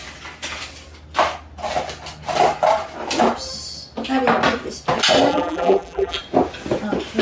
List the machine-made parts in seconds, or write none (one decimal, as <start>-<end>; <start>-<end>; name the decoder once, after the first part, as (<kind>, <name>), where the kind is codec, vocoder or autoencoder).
5.3-6.2 (vocoder, BigVGAN v2)